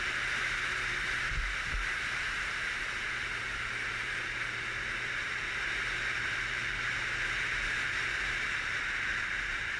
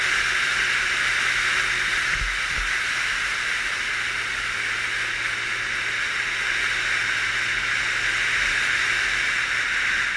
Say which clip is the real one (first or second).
second